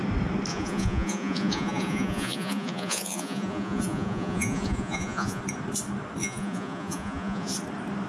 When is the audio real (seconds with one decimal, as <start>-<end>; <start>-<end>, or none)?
0.0-0.5; 5.4-6.2; 7.5-8.1